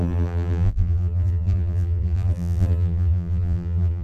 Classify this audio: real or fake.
fake